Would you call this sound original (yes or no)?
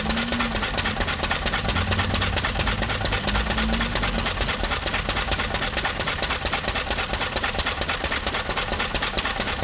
yes